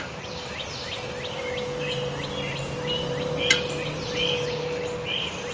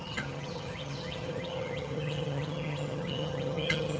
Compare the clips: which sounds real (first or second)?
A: first